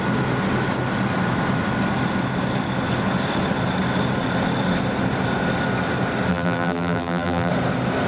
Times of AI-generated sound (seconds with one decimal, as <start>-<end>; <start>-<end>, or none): 6.3-7.5